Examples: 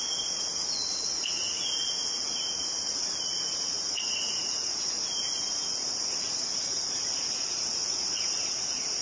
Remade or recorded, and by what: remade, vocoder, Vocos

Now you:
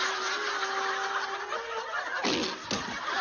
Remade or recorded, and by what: recorded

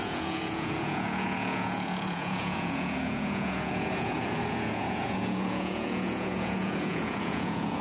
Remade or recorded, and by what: remade, vocoder, Vocos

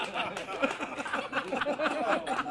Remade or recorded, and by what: recorded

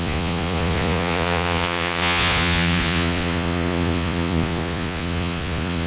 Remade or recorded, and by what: remade, vocoder, Vocos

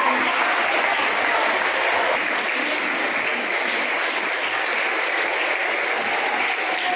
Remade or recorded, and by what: recorded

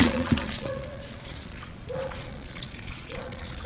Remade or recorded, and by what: remade, vocoder, Vocos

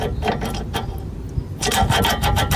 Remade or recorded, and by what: recorded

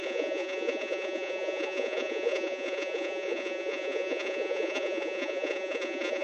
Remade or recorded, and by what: remade, vocoder, Vocos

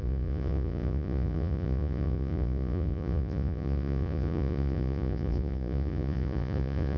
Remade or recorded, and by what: remade, vocoder, Vocos